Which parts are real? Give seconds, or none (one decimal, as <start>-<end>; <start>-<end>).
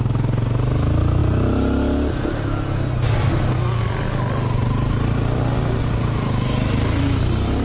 0.0-7.6